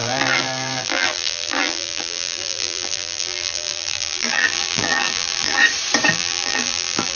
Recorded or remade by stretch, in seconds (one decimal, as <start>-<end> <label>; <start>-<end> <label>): 0.0-5.6 remade; 5.6-6.1 recorded; 6.1-7.2 remade